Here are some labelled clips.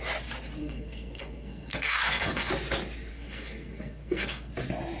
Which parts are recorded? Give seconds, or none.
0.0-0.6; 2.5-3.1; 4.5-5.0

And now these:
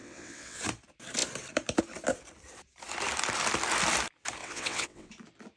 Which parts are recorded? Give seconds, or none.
0.6-4.4; 5.1-5.6

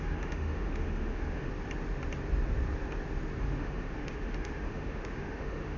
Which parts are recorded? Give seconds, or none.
1.5-3.4

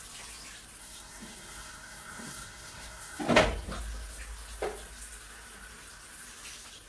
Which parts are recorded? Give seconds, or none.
0.0-0.8; 3.2-6.9

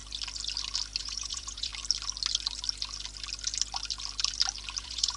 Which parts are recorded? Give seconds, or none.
0.0-1.0; 1.7-4.8

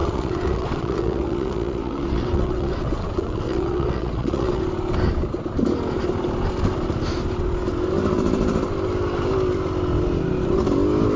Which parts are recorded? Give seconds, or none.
4.6-11.2